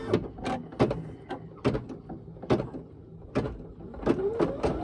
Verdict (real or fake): real